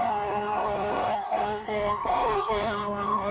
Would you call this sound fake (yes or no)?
yes